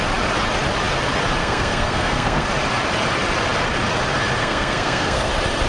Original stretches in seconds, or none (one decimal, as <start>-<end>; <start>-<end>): 0.0-1.4; 2.5-4.4; 5.3-5.7